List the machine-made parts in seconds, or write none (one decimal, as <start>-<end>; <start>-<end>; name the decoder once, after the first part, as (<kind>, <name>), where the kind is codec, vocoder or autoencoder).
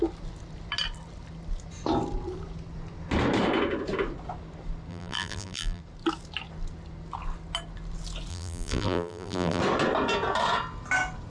4.9-5.8 (vocoder, BigVGAN v2); 8.3-9.6